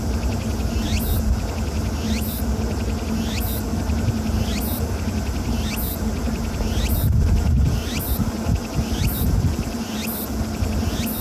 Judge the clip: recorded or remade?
recorded